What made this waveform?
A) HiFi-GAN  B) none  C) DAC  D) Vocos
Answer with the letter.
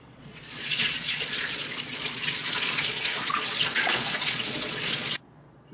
D